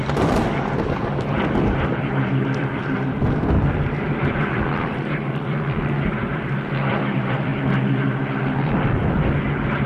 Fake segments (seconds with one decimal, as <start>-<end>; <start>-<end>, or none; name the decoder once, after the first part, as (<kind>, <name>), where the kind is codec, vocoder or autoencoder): 0.0-7.5 (vocoder, BigVGAN v2); 8.4-9.9